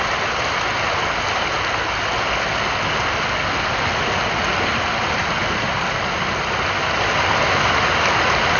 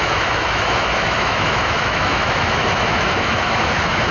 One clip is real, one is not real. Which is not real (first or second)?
second